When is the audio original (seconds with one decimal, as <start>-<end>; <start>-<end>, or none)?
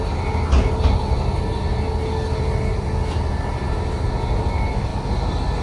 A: 0.0-5.6